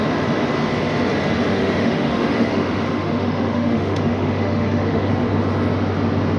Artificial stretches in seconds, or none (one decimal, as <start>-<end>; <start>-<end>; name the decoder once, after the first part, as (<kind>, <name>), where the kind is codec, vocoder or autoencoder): 1.5-5.1 (autoencoder, DAC-VAE)